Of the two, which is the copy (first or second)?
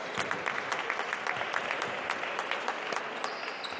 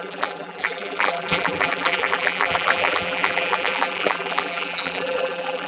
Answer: second